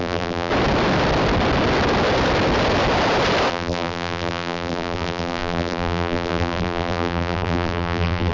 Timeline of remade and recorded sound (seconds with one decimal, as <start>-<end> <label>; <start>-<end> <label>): 0.0-0.5 remade; 0.5-3.5 recorded; 3.5-8.3 remade